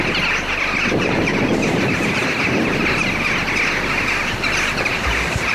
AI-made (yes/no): no